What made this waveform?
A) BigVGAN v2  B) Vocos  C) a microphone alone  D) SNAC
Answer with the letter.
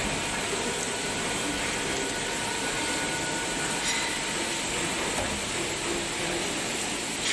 C